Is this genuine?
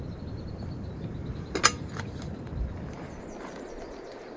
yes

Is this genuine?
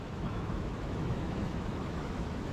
no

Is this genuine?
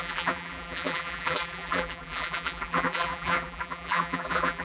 no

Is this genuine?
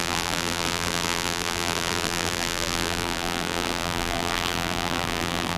no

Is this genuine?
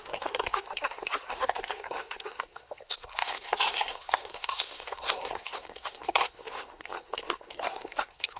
no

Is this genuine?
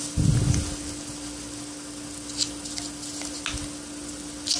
yes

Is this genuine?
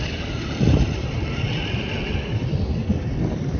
yes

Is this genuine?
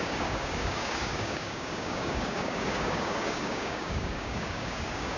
no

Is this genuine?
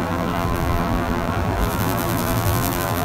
no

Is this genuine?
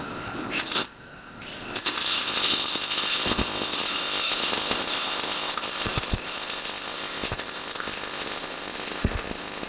no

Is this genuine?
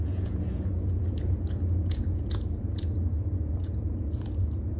no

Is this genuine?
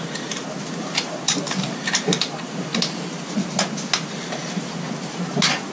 yes